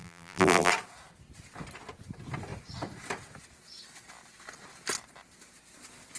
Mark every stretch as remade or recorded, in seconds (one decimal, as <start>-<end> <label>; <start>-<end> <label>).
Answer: 0.0-0.7 remade; 0.7-6.2 recorded

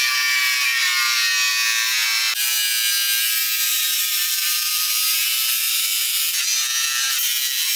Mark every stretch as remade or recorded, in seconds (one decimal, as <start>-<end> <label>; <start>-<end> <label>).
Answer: 0.0-3.7 recorded; 3.7-4.9 remade; 4.9-5.6 recorded; 5.6-7.8 remade

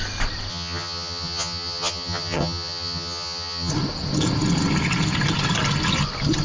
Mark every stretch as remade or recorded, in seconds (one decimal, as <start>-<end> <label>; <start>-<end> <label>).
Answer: 0.0-0.5 recorded; 0.5-3.7 remade; 3.7-6.4 recorded

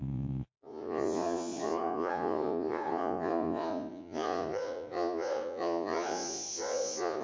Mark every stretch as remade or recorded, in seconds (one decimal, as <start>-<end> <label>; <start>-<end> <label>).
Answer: 0.0-7.2 remade